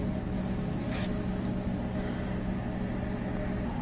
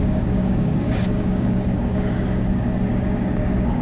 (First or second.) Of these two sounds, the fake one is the second